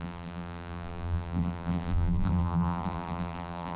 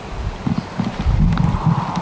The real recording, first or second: second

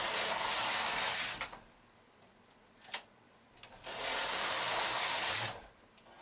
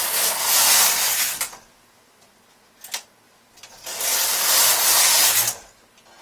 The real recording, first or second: second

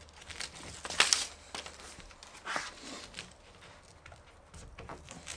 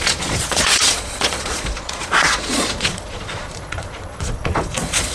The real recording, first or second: first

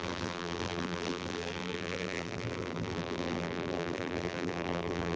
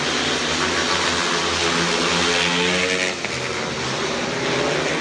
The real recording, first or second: second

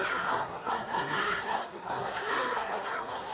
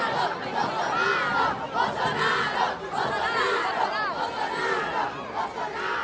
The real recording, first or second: second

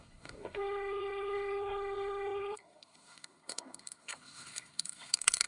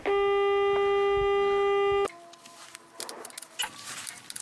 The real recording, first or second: second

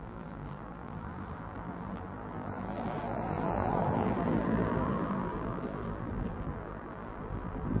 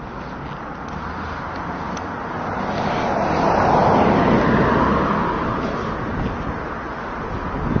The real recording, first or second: second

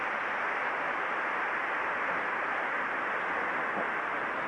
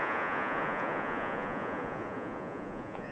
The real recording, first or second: first